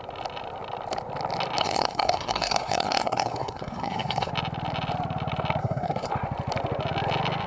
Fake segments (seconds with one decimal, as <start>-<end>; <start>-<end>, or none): 1.6-4.3; 5.6-6.1